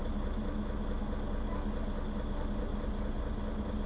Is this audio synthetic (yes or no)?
no